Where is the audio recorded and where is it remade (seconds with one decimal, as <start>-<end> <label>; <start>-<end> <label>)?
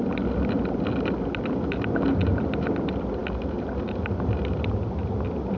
0.0-5.6 recorded